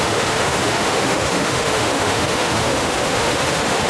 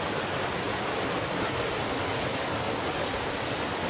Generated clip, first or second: first